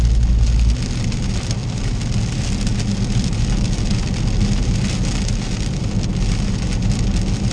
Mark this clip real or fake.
real